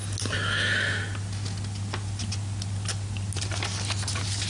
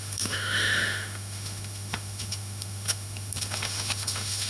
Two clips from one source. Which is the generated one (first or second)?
second